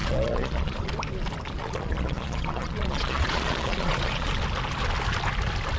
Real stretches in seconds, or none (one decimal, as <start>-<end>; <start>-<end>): 0.9-1.6; 4.3-5.8